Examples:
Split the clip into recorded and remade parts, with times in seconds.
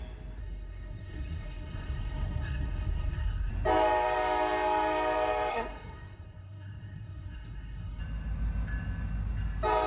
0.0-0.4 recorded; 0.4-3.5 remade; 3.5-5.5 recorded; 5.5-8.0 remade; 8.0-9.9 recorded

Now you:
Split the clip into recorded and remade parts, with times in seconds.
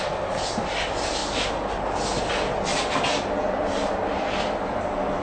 0.0-5.2 recorded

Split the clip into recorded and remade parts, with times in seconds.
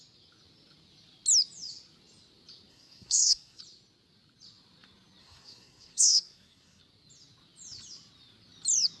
0.0-2.7 recorded; 2.7-3.6 remade; 3.6-5.2 recorded; 5.2-6.8 remade; 6.8-9.0 recorded